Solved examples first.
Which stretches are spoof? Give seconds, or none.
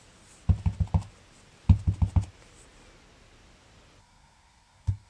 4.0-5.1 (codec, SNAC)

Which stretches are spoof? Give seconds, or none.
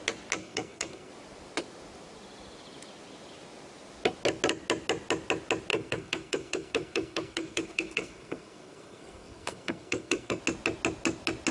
0.4-1.1 (codec, SNAC); 5.7-10.4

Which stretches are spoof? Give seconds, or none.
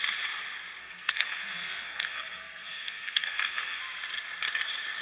0.8-3.8 (codec, SNAC)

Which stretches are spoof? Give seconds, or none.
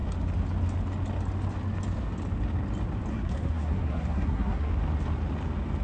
3.1-4.7 (codec, SNAC)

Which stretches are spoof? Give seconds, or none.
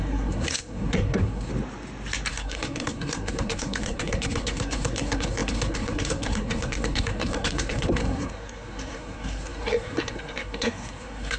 0.0-1.5 (codec, SNAC); 2.3-11.4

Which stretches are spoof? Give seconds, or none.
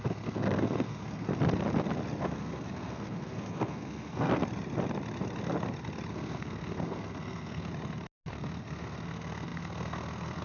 0.0-1.3 (codec, SNAC); 2.2-4.3; 6.1-7.7; 8.3-10.4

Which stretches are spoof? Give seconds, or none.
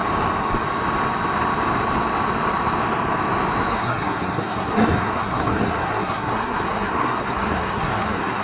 3.7-8.4 (codec, SNAC)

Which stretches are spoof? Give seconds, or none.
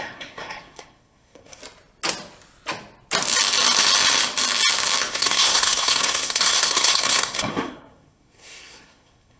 0.0-1.6 (codec, SNAC); 5.1-9.4